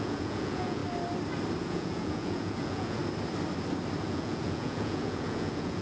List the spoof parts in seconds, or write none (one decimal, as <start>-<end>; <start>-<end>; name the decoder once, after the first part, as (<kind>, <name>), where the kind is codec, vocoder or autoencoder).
0.0-0.8 (vocoder, Vocos); 1.6-3.0; 4.0-5.8

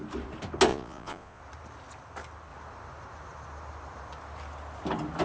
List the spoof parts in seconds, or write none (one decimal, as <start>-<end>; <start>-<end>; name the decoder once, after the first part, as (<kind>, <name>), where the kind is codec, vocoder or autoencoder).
0.7-1.4 (vocoder, Vocos)

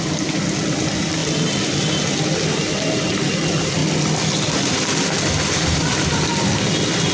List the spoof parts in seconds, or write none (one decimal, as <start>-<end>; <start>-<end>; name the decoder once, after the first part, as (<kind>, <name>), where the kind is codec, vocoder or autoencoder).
none

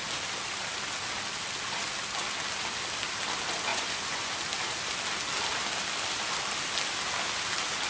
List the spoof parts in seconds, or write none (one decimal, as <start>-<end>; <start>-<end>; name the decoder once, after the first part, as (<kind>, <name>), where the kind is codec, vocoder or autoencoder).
3.7-4.3 (vocoder, Vocos)

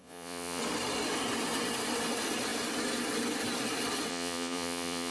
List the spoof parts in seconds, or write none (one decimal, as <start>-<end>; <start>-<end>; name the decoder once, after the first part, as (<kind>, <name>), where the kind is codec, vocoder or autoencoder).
0.0-0.6 (vocoder, Vocos); 4.1-5.1

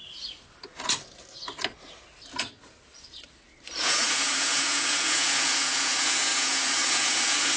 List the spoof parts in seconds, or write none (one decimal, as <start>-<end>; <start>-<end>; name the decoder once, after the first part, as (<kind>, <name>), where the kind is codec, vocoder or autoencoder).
3.8-7.6 (vocoder, Vocos)